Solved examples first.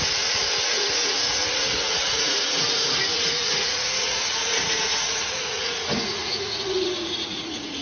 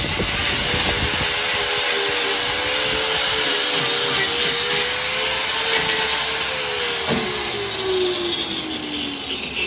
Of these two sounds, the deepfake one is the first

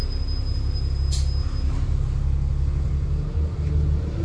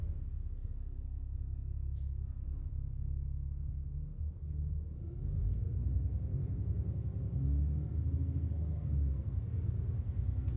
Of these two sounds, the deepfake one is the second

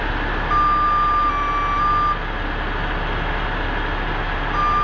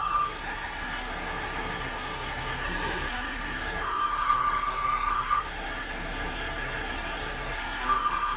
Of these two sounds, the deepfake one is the second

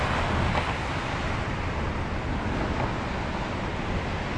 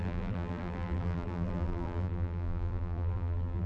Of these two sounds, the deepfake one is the second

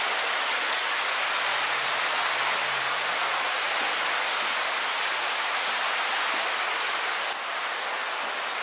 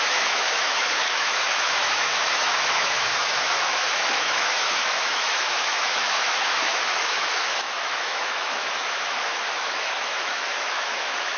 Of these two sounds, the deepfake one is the second